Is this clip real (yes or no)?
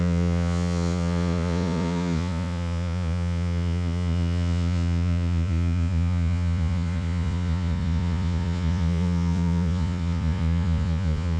no